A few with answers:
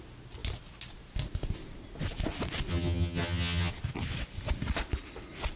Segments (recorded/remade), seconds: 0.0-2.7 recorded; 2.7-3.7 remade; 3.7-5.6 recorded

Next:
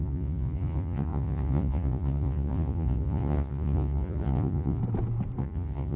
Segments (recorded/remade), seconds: 0.0-4.8 remade; 4.8-5.4 recorded; 5.4-6.0 remade

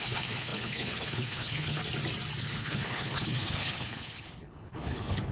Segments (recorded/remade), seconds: 0.0-1.8 remade; 1.8-2.4 recorded; 2.4-5.3 remade